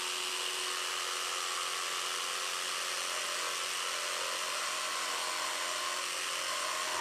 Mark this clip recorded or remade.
recorded